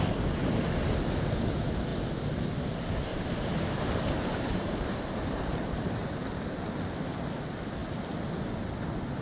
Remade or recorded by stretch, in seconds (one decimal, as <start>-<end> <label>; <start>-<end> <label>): 0.0-3.1 recorded; 3.1-6.7 remade; 6.7-9.2 recorded

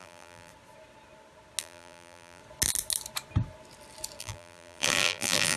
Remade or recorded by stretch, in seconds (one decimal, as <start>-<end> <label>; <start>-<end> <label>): 0.0-0.5 remade; 0.5-1.6 recorded; 1.6-2.4 remade; 2.4-4.2 recorded; 4.2-5.6 remade

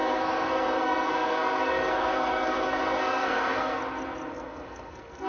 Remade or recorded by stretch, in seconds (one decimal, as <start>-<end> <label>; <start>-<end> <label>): 0.0-3.8 remade; 3.8-4.3 recorded; 4.3-5.3 remade

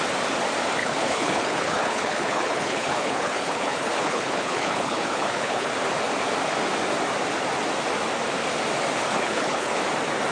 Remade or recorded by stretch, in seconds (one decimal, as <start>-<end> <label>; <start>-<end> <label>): 0.0-0.8 recorded; 0.8-5.7 remade; 5.7-9.1 recorded; 9.1-9.8 remade; 9.8-10.3 recorded